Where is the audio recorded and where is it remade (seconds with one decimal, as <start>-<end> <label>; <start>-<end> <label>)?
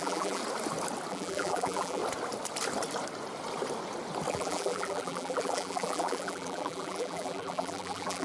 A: 0.0-0.4 remade; 0.4-1.1 recorded; 1.1-2.0 remade; 2.0-4.3 recorded; 4.3-8.2 remade